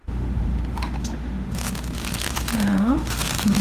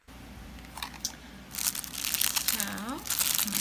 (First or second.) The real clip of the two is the second